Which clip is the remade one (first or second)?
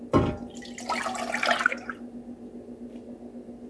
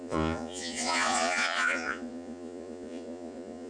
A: second